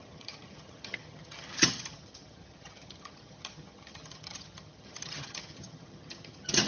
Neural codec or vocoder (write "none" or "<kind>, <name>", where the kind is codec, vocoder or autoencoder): vocoder, HiFi-GAN